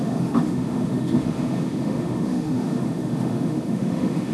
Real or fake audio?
fake